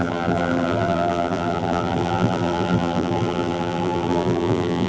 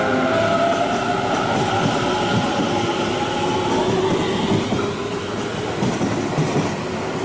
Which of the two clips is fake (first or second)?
first